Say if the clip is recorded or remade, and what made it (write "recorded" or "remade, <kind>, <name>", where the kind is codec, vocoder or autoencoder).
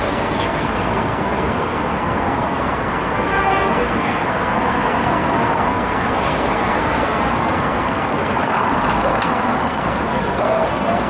remade, codec, SNAC